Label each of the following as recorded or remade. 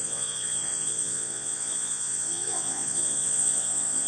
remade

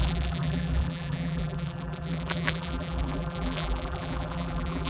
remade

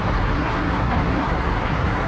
remade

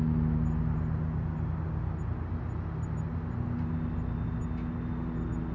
recorded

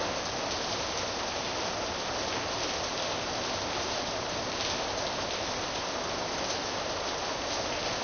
remade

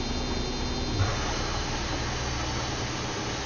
recorded